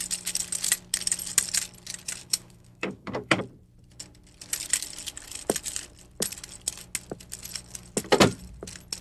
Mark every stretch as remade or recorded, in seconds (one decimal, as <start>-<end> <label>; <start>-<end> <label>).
0.0-2.2 recorded; 2.2-3.4 remade; 3.4-9.0 recorded

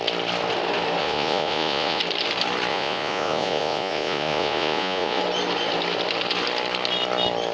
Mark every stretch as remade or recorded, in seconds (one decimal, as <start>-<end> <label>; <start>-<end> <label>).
0.0-1.0 recorded; 1.0-2.0 remade; 2.0-2.7 recorded; 2.7-5.2 remade; 5.2-7.5 recorded

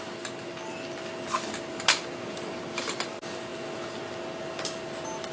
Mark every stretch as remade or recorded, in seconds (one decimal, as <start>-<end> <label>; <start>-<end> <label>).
0.0-5.3 recorded